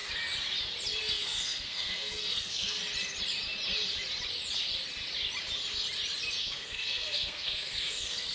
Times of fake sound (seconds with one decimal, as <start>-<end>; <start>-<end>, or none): 1.0-2.8; 6.4-8.3